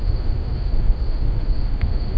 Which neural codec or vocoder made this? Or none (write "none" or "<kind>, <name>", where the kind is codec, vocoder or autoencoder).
autoencoder, DAC-VAE